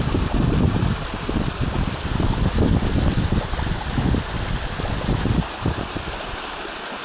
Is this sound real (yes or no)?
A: yes